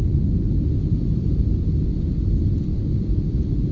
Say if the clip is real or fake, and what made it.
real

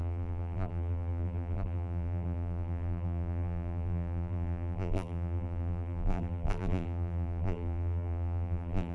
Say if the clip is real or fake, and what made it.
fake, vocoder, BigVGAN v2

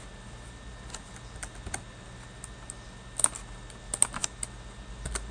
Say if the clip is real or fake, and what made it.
real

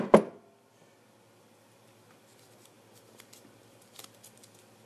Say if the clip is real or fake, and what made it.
real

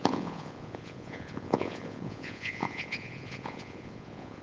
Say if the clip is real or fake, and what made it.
fake, vocoder, Vocos